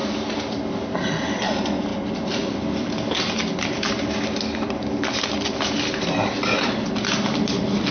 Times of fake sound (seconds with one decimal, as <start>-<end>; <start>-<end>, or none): none